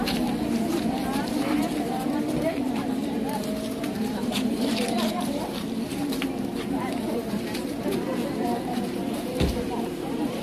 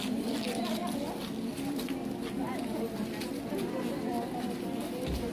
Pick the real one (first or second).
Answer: second